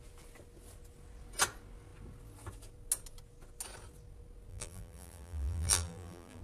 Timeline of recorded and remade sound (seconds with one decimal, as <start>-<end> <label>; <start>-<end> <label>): 0.0-4.5 recorded; 4.5-6.4 remade